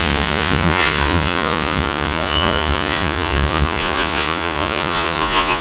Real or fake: fake